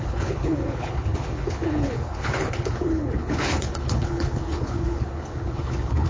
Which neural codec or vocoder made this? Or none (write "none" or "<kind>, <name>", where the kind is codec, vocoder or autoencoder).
codec, HILCodec